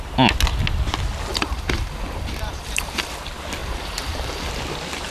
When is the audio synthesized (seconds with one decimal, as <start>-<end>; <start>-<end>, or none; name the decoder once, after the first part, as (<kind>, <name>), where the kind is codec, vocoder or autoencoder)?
1.3-3.1 (vocoder, BigVGAN v2); 3.6-4.5